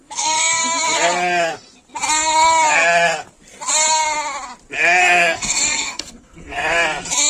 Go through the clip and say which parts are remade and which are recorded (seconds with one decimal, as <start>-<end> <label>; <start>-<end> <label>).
0.0-0.6 remade; 0.6-5.0 recorded; 5.0-6.5 remade; 6.5-7.3 recorded